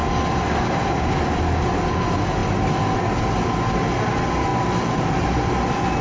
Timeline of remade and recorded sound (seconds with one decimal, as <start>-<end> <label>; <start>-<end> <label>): 0.0-6.0 recorded